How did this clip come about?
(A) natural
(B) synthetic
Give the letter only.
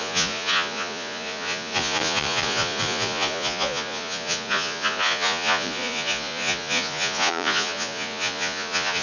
B